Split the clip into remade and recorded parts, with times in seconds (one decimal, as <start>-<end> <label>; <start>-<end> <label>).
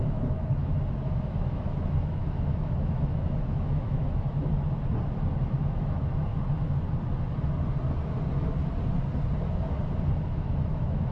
0.0-4.4 remade; 4.4-5.4 recorded; 5.4-6.3 remade; 6.3-10.2 recorded; 10.2-11.1 remade